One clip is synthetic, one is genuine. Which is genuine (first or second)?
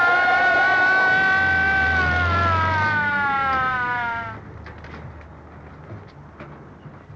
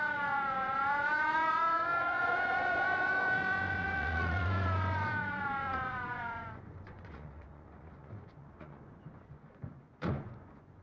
first